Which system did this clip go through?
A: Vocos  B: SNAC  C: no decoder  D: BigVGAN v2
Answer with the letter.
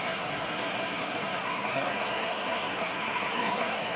B